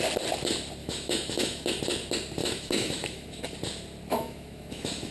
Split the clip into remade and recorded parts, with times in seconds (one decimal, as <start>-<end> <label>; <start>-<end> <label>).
0.0-0.8 recorded; 0.8-1.8 remade; 1.8-2.4 recorded; 2.4-3.4 remade; 3.4-4.1 recorded; 4.1-5.1 remade